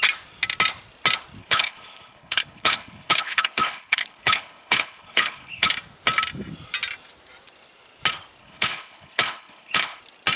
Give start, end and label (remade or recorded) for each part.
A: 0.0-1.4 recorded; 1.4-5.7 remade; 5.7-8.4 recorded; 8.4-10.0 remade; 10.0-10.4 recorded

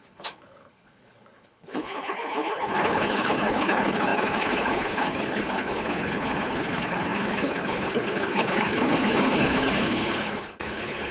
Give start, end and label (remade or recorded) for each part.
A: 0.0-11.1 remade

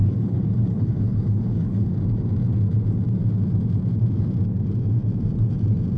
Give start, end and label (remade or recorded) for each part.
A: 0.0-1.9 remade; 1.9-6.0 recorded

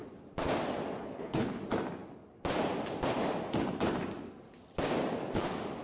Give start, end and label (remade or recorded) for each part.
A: 0.0-1.0 recorded; 1.0-1.6 remade; 1.6-5.8 recorded